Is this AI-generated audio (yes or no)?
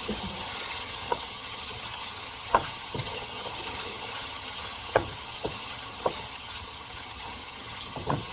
yes